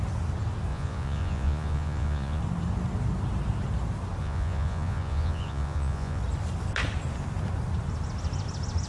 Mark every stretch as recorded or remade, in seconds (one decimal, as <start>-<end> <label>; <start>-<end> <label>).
0.0-0.7 recorded; 0.7-2.4 remade; 2.4-4.2 recorded; 4.2-6.2 remade; 6.2-8.9 recorded